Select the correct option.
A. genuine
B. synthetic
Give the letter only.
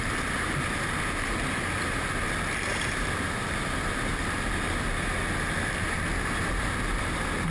A